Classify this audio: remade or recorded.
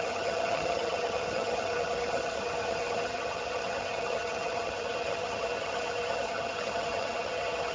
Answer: remade